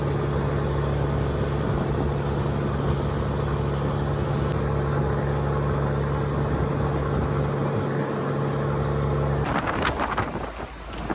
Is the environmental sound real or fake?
real